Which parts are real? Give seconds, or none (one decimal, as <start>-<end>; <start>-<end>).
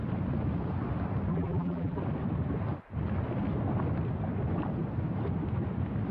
0.0-1.3; 2.0-6.1